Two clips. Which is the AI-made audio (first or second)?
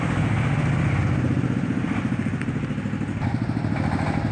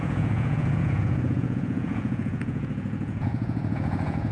second